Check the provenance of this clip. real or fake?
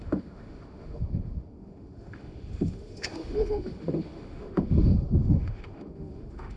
fake